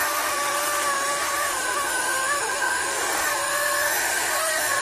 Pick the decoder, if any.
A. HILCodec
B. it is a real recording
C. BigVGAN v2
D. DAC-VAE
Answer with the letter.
D